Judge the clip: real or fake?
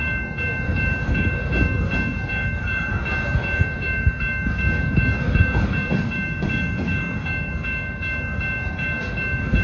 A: fake